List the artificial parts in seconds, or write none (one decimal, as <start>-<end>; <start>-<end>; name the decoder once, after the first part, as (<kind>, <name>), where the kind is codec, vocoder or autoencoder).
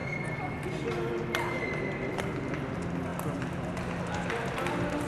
none